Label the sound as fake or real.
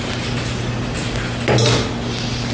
real